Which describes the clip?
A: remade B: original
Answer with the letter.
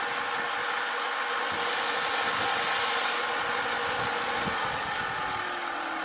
B